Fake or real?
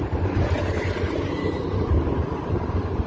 real